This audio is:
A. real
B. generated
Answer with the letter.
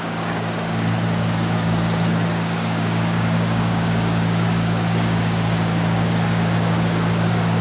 B